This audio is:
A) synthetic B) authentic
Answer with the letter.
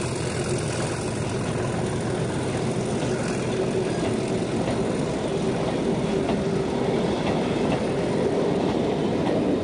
B